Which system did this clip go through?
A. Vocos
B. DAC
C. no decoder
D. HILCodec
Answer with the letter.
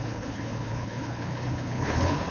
D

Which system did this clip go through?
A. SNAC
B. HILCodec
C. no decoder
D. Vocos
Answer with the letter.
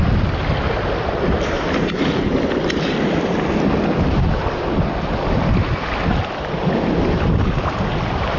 C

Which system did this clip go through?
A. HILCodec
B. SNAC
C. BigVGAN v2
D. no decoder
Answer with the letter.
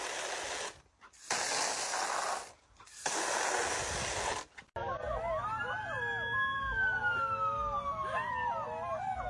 D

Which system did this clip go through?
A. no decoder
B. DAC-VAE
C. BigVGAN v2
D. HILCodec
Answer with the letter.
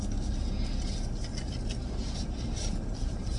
A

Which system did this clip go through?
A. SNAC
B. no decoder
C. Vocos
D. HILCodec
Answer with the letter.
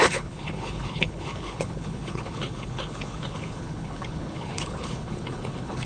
D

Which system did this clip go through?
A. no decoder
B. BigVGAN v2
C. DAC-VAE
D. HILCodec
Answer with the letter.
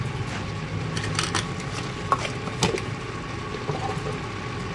A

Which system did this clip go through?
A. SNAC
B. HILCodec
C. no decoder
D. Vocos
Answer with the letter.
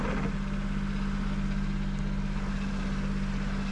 C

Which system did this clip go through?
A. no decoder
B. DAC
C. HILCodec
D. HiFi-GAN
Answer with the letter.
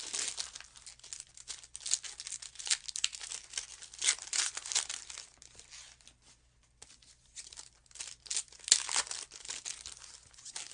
A